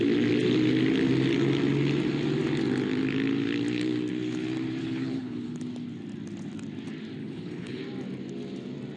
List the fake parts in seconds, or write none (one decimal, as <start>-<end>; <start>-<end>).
4.8-5.6; 7.2-7.8